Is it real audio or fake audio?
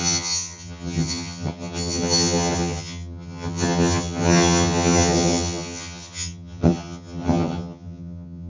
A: fake